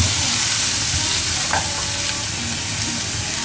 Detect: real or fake real